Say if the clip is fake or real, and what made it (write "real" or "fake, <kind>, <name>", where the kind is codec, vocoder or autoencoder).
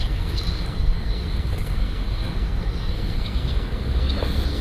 fake, codec, SNAC